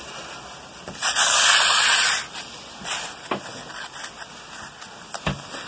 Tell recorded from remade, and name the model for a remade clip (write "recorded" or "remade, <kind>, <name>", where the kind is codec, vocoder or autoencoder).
recorded